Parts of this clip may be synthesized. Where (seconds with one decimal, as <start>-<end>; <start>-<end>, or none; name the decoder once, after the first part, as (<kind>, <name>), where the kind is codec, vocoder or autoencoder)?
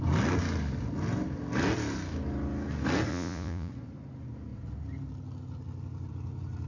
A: 3.1-3.7 (vocoder, Vocos)